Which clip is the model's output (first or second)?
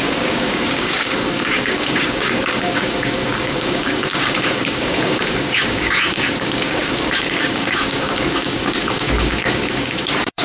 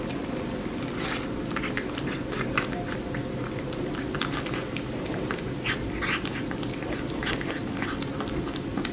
first